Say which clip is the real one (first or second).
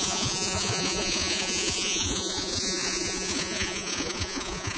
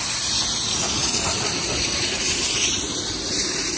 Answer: second